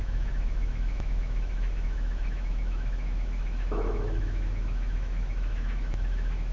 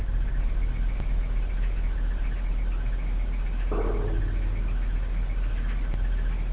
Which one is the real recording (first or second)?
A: second